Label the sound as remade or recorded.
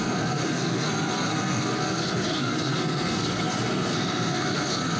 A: remade